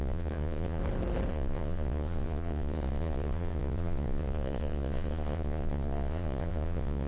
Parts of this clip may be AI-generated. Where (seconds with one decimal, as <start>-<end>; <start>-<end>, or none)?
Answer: 0.0-0.8; 1.3-7.1